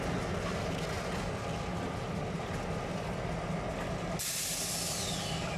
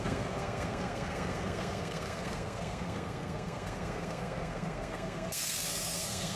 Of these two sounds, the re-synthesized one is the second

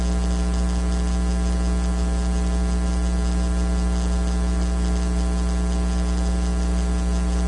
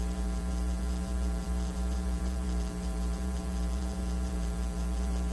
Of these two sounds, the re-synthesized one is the second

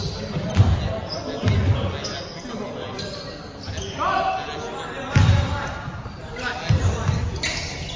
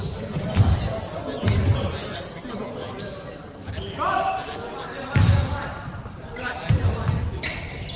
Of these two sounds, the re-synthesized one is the second